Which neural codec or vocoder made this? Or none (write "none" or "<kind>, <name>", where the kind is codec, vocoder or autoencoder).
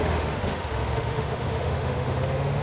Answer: autoencoder, DAC-VAE